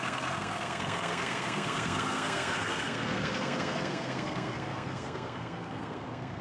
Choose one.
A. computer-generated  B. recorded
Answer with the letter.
A